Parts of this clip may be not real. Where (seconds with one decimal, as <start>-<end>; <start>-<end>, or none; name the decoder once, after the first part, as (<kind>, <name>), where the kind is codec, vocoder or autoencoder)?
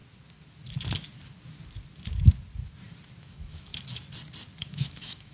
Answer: 3.2-3.7 (autoencoder, DAC-VAE); 4.6-5.3